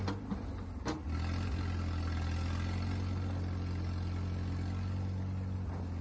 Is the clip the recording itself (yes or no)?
yes